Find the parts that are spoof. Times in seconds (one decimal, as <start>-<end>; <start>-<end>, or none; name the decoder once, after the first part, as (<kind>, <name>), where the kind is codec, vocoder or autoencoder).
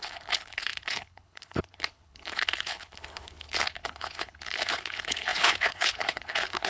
0.0-6.7 (codec, HILCodec)